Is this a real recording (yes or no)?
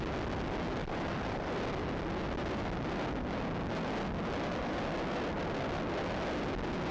yes